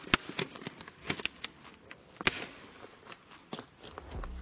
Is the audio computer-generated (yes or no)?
no